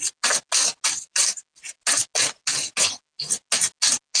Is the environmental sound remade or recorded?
recorded